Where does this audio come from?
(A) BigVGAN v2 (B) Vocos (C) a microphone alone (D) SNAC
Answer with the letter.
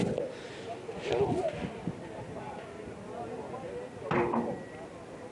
C